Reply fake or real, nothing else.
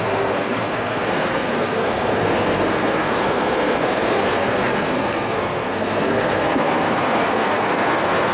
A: fake